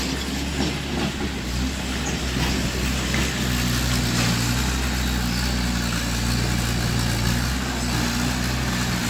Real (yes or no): yes